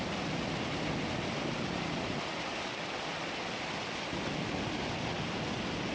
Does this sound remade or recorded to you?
recorded